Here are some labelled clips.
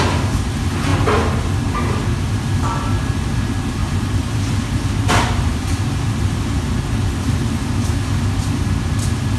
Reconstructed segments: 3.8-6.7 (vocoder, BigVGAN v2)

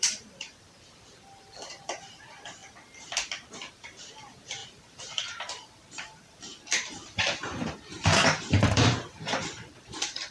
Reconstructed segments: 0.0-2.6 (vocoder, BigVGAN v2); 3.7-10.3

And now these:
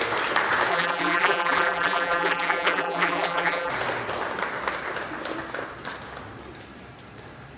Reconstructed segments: 0.7-3.7 (vocoder, BigVGAN v2)

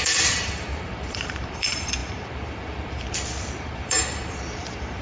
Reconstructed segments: 0.0-5.0 (vocoder, BigVGAN v2)

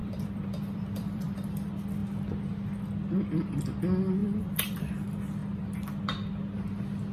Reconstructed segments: 0.0-1.5 (vocoder, BigVGAN v2); 4.2-4.9

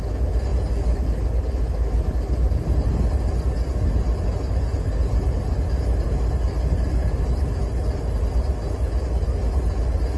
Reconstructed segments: none

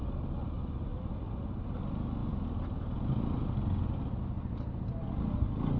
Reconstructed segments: 0.9-1.6 (vocoder, BigVGAN v2); 2.2-3.4

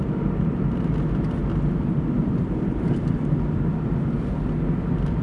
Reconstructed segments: 1.4-4.5 (vocoder, BigVGAN v2)